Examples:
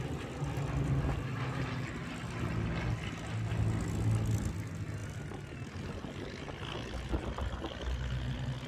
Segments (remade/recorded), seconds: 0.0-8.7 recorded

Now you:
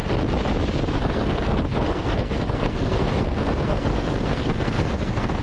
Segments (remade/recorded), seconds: 0.0-0.9 recorded; 0.9-5.4 remade

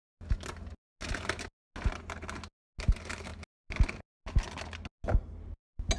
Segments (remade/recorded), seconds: 0.0-6.0 recorded

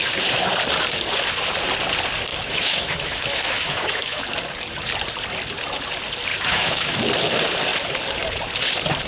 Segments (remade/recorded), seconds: 0.0-2.3 recorded; 2.3-4.2 remade; 4.2-6.3 recorded; 6.3-7.0 remade; 7.0-9.1 recorded

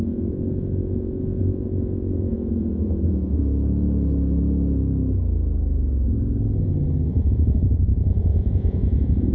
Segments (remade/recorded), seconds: 0.0-3.4 remade; 3.4-7.1 recorded; 7.1-9.3 remade

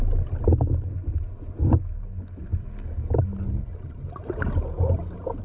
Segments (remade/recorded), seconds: 0.0-5.4 recorded

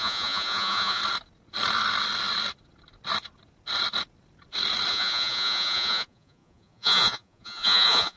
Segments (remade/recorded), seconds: 0.0-1.0 remade; 1.0-4.9 recorded; 4.9-8.2 remade

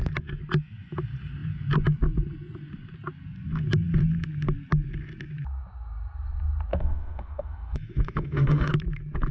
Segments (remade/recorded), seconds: 0.0-6.7 recorded; 6.7-8.7 remade; 8.7-9.3 recorded